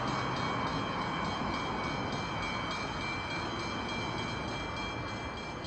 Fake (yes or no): no